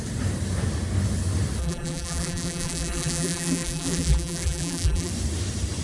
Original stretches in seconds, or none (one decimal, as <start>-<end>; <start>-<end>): 0.0-1.6; 5.1-5.8